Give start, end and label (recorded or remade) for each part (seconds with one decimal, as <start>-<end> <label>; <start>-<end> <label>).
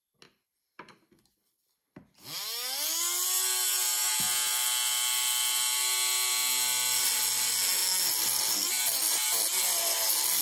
0.0-10.4 recorded